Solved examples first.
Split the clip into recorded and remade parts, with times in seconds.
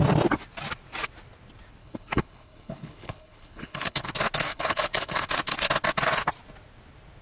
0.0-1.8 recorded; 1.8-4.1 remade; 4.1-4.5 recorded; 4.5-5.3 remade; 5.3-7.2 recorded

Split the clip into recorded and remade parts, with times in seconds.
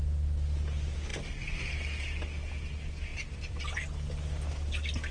0.0-1.1 recorded; 1.1-1.6 remade; 1.6-3.1 recorded; 3.1-3.6 remade; 3.6-5.1 recorded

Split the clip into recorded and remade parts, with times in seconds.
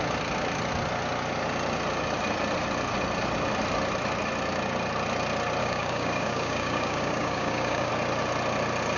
0.0-5.6 recorded; 5.6-7.9 remade; 7.9-9.0 recorded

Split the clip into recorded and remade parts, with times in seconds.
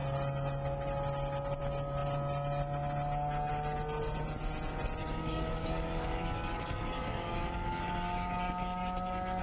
0.0-5.0 recorded; 5.0-9.4 remade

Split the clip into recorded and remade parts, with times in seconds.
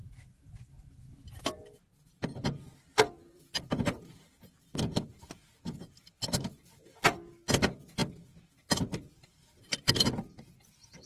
0.0-11.1 recorded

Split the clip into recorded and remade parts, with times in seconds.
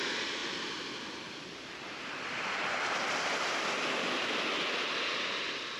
0.0-0.4 recorded; 0.4-3.7 remade; 3.7-5.8 recorded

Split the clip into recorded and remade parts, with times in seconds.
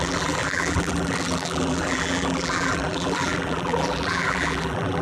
0.0-5.0 remade